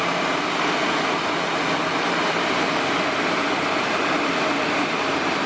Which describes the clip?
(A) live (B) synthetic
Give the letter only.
A